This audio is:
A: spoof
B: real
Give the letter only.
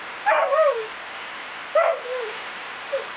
A